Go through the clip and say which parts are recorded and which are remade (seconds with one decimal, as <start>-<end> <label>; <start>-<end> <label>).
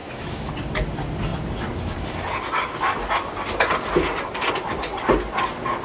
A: 0.0-0.5 remade; 0.5-5.8 recorded